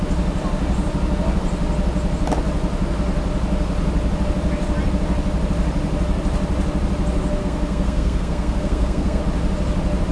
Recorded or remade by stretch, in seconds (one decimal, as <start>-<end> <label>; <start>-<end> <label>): 0.0-7.4 recorded; 7.4-9.2 remade; 9.2-10.1 recorded